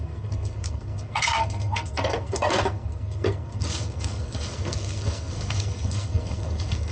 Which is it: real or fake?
fake